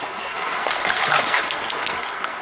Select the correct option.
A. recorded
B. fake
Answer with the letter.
B